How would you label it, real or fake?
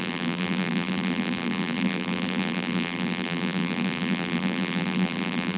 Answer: fake